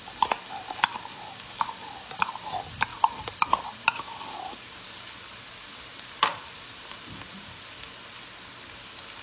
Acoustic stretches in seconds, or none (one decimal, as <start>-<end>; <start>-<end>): 0.0-9.2